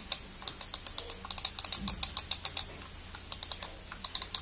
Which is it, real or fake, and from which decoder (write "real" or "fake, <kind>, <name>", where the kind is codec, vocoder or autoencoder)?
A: real